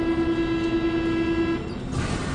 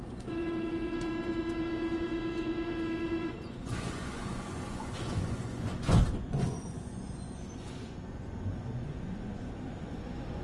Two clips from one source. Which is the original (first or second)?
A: first